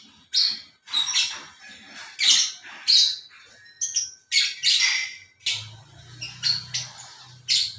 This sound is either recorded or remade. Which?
recorded